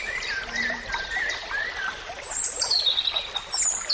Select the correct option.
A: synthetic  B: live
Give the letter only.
B